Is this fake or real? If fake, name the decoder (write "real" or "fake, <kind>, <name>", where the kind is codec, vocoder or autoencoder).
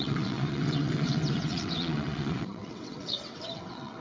fake, vocoder, WaveNeXt